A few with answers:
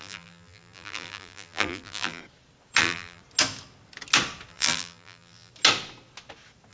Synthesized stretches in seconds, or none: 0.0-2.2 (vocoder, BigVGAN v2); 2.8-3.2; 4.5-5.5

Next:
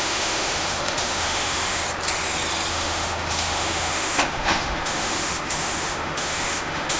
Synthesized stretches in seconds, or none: 0.0-1.8 (autoencoder, DAC-VAE); 2.7-7.0

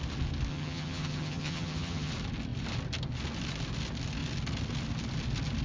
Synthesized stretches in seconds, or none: 0.5-2.1 (vocoder, HiFi-GAN)